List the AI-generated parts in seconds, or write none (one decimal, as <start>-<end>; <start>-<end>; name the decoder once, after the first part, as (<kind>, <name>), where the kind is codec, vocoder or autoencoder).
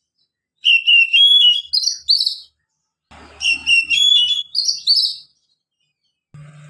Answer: 0.9-1.7 (autoencoder, DAC-VAE)